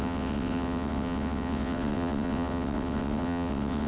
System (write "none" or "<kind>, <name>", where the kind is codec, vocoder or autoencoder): vocoder, WaveNeXt